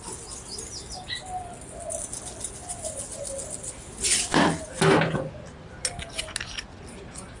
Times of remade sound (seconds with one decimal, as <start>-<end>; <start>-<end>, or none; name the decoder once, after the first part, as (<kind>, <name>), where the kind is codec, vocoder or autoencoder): none